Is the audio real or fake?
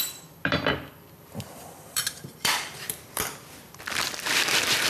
fake